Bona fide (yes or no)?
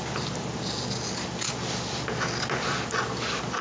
yes